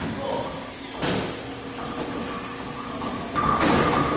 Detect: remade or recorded recorded